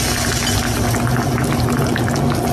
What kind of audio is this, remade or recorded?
recorded